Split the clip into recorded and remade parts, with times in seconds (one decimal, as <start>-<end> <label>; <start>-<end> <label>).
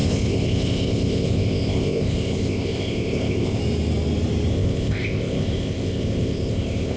0.0-3.6 remade; 3.6-4.5 recorded; 4.5-7.0 remade